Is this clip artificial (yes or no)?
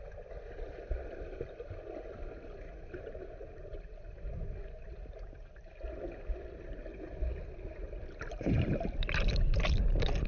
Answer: no